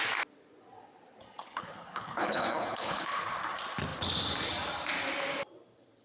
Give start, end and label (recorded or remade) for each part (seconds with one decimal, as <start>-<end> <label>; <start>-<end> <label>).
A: 0.0-1.4 recorded; 1.4-3.2 remade; 3.2-6.0 recorded